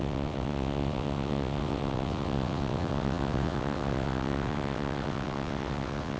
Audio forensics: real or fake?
fake